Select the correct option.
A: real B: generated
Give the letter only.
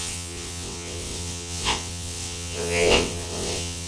B